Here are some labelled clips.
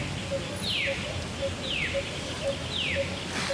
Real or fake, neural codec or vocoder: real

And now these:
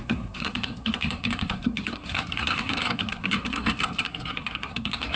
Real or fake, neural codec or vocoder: fake, codec, SNAC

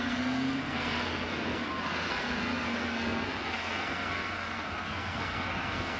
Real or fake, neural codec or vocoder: fake, codec, SNAC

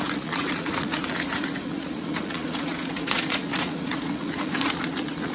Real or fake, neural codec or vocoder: fake, vocoder, Vocos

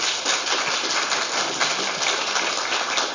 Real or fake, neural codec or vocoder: real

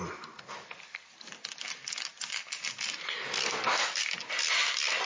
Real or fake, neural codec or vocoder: real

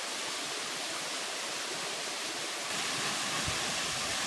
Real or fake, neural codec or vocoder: real